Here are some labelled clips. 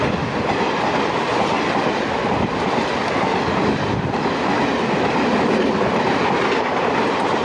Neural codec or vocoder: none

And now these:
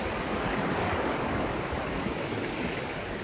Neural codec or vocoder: codec, DAC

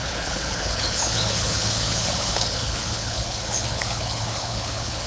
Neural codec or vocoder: codec, HILCodec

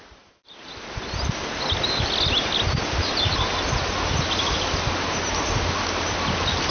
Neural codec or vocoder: none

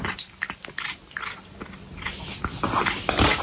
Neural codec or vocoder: none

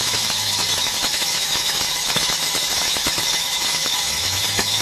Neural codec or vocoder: autoencoder, DAC-VAE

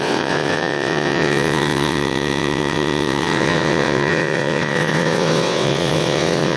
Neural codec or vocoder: vocoder, WaveNeXt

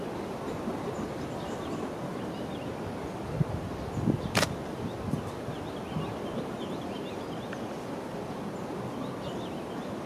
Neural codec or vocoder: none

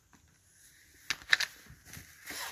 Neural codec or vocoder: none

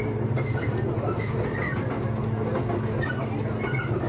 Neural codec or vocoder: none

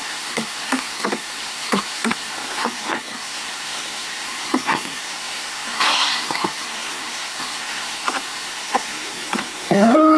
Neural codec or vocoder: codec, SNAC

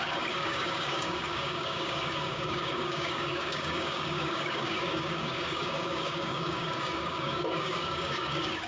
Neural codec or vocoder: codec, DAC